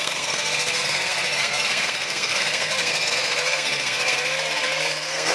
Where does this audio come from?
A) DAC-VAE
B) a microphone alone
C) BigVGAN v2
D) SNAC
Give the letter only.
D